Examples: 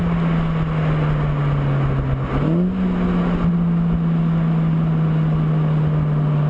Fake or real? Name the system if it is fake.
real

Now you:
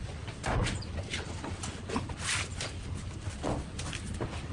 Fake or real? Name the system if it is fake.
real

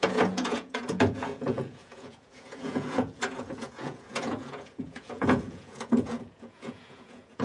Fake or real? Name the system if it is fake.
fake, vocoder, Vocos